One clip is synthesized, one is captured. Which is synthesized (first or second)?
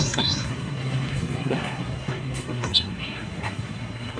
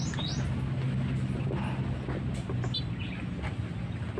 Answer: first